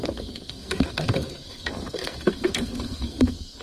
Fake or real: fake